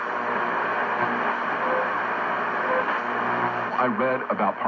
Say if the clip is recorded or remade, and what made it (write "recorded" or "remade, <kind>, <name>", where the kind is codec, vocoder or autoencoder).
recorded